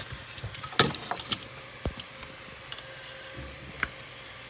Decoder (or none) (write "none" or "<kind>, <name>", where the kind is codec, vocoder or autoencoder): none